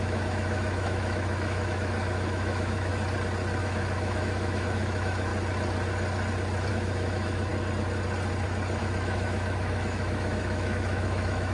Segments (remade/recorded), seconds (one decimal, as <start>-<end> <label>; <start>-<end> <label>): 0.0-2.9 remade; 2.9-3.6 recorded; 3.6-5.3 remade; 5.3-6.7 recorded; 6.7-7.5 remade; 7.5-8.8 recorded; 8.8-11.5 remade